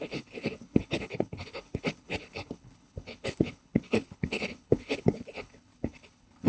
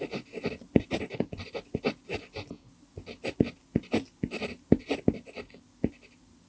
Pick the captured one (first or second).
second